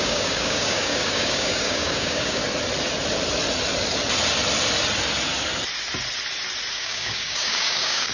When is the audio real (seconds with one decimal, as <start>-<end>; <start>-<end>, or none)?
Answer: 2.4-6.7